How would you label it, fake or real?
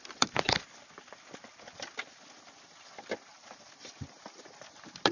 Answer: real